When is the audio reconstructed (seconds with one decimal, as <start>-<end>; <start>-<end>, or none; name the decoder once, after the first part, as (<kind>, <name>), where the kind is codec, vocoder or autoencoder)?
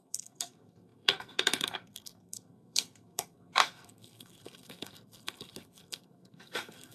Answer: 0.0-6.9 (codec, SNAC)